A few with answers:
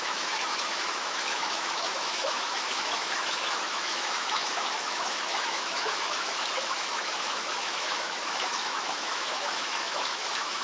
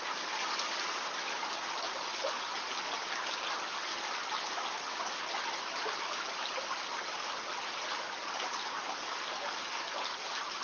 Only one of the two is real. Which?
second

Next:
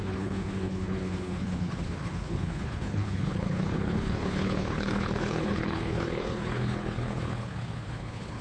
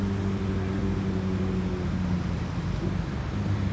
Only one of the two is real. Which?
second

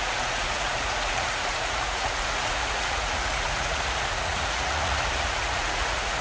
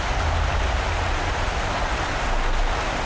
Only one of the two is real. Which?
second